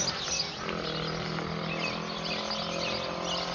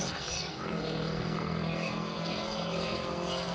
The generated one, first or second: second